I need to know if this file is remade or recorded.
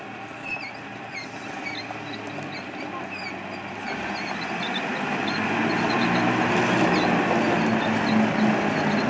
recorded